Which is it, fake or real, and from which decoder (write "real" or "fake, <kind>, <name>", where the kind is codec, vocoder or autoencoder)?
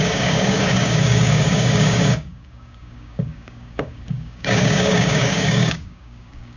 fake, codec, DAC